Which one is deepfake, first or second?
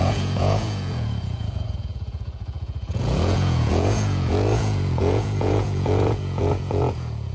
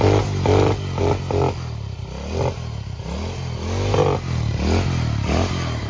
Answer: first